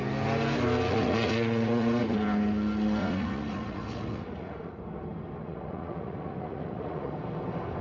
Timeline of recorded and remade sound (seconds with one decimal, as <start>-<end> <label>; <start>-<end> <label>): 0.0-0.9 recorded; 0.9-2.0 remade; 2.0-3.0 recorded; 3.0-4.8 remade; 4.8-5.4 recorded; 5.4-7.1 remade; 7.1-7.8 recorded